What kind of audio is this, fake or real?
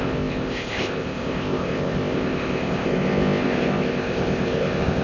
fake